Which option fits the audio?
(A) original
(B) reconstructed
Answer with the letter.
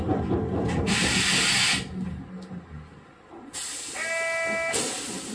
A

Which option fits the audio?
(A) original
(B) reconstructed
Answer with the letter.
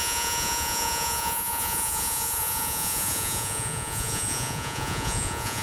B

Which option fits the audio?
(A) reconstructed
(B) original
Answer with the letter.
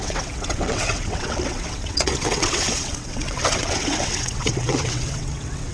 A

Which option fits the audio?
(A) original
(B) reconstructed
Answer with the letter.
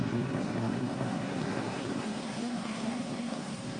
B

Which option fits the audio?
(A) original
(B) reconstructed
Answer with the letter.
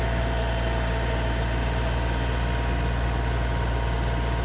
A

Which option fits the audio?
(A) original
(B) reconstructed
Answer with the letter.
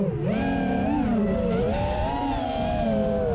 A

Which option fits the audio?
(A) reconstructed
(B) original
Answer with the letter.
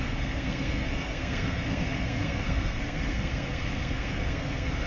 A